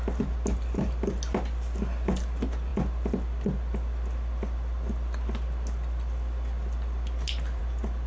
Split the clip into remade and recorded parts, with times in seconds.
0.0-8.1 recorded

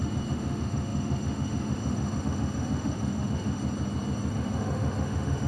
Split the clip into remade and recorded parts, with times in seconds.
0.0-3.6 remade; 3.6-4.3 recorded; 4.3-5.5 remade

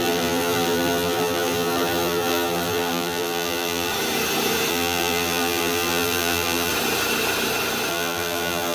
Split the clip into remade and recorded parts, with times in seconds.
0.0-3.9 remade; 3.9-4.7 recorded; 4.7-6.7 remade; 6.7-7.9 recorded; 7.9-8.7 remade

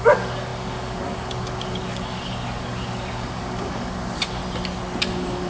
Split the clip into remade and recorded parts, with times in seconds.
0.0-4.4 remade; 4.4-5.1 recorded; 5.1-5.5 remade